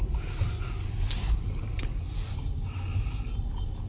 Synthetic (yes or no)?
no